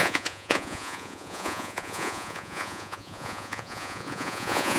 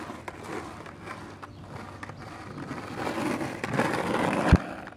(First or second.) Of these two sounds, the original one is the second